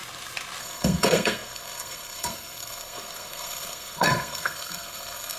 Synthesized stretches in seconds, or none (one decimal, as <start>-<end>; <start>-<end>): 0.6-5.4